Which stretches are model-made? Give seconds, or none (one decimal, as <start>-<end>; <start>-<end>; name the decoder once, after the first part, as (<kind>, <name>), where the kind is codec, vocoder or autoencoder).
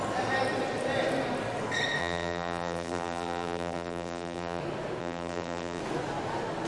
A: 2.0-4.6 (vocoder, BigVGAN v2); 5.0-5.8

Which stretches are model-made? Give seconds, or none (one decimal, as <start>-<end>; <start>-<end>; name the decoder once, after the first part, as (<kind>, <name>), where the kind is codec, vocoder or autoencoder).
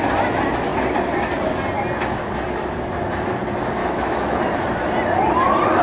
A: 3.8-4.4 (autoencoder, DAC-VAE)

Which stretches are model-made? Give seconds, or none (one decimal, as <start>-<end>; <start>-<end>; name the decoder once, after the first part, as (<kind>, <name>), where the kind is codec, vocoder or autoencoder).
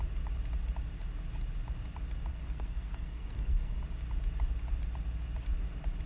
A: 2.3-3.8 (codec, SNAC)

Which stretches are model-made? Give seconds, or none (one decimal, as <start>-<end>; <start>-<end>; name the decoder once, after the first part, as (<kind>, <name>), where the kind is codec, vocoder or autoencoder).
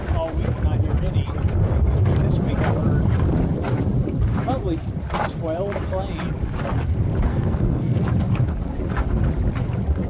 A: 7.3-8.0 (codec, SNAC)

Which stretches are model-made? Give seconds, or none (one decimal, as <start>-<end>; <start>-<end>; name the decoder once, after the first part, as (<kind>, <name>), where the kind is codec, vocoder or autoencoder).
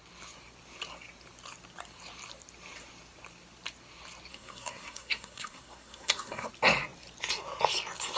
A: 4.3-6.5 (codec, SNAC)